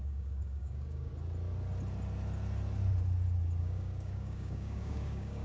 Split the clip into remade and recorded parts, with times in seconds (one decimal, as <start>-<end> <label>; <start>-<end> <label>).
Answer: 0.0-1.1 remade; 1.1-3.6 recorded; 3.6-5.4 remade